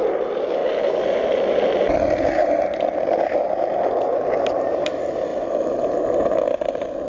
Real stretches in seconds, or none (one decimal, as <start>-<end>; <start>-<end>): 0.0-7.1